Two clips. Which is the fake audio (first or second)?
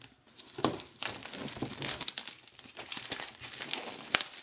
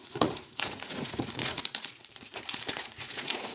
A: second